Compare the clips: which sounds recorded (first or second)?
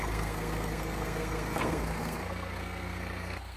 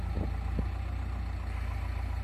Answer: second